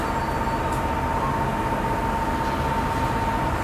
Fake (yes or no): no